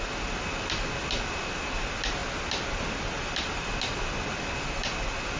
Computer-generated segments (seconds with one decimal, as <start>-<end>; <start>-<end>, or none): none

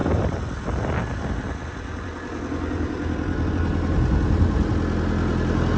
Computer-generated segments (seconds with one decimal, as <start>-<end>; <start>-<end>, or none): none

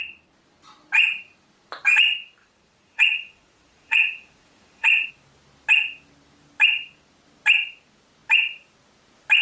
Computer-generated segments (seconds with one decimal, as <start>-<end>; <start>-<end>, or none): 2.4-5.1

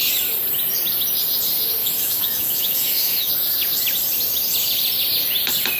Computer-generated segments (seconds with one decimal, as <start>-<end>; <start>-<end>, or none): 1.8-3.3

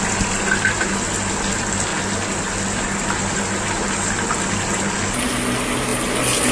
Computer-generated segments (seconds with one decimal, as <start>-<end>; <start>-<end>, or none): none

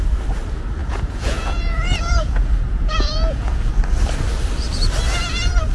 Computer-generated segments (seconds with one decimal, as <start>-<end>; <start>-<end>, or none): 0.8-3.7

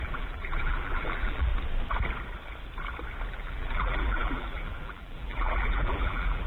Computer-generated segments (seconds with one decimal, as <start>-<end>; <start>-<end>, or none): 0.0-1.5; 3.3-6.5